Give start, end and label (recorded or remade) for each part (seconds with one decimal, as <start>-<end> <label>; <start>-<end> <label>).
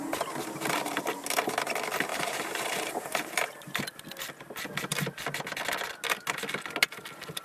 0.0-2.1 recorded; 2.1-3.8 remade; 3.8-7.4 recorded